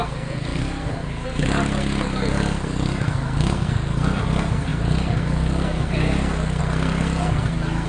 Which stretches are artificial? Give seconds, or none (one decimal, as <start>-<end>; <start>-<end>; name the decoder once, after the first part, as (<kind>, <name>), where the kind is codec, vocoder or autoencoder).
0.0-7.9 (codec, SNAC)